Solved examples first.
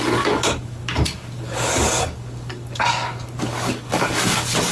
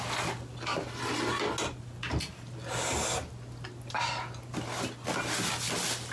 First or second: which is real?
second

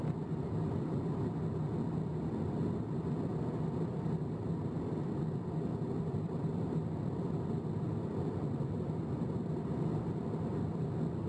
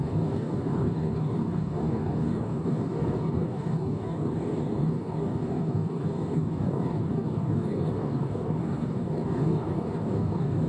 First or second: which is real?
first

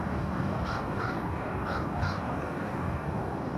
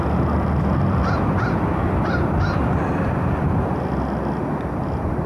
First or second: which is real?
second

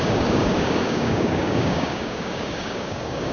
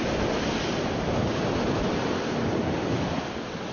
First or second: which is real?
second